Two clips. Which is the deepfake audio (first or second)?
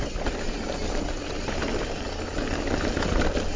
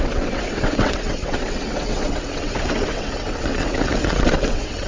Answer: second